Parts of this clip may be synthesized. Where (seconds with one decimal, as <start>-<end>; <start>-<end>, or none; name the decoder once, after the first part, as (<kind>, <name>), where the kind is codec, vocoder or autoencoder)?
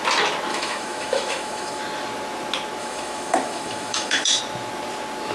0.5-1.8 (autoencoder, DAC-VAE); 2.8-4.4